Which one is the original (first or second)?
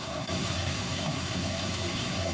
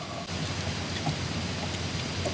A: second